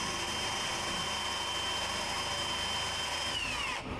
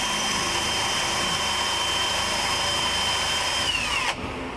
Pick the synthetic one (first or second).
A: second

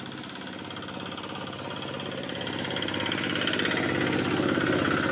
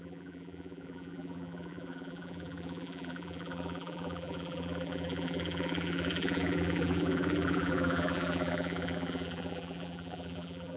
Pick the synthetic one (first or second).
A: second